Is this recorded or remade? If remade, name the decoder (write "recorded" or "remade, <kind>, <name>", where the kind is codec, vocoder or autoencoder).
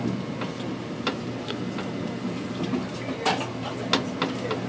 recorded